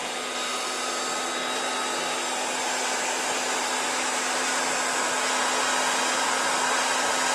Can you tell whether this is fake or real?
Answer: real